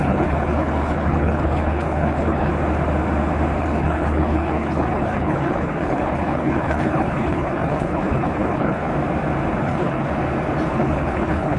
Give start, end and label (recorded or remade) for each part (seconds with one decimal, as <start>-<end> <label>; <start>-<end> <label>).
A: 0.0-2.5 remade; 2.5-3.6 recorded; 3.6-8.9 remade; 8.9-9.6 recorded; 9.6-10.1 remade; 10.1-10.7 recorded; 10.7-11.6 remade